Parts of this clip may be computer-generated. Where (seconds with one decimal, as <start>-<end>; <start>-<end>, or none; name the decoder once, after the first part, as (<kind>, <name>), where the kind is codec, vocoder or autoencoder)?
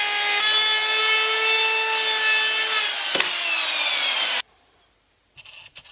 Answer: none